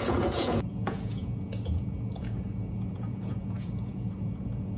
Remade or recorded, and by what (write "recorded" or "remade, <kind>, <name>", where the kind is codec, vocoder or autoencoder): remade, vocoder, Vocos